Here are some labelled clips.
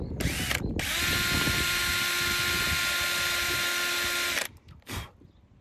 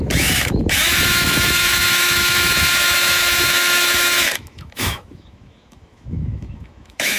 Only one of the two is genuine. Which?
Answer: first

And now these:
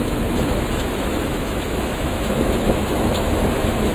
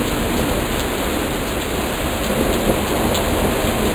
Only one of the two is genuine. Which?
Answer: second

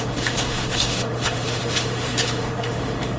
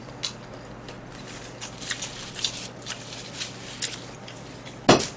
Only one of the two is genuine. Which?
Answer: second